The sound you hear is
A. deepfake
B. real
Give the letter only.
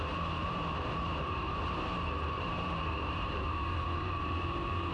A